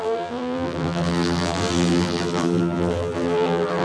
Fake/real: fake